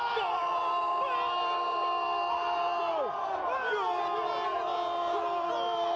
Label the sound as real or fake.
real